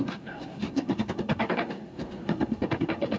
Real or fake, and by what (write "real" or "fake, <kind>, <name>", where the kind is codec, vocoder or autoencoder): fake, codec, SNAC